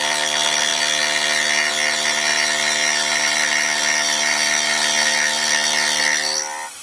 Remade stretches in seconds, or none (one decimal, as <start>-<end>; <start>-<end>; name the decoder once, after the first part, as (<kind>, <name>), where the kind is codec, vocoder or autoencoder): none